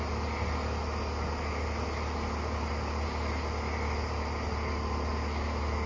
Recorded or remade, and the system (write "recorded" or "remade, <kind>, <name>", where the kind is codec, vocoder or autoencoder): recorded